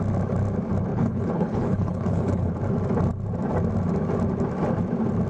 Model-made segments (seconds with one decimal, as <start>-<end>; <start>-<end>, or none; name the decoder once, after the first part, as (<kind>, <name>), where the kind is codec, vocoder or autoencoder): 0.9-2.5 (codec, HILCodec)